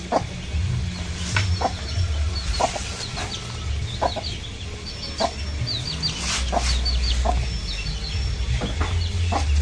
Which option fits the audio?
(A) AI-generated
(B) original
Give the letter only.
B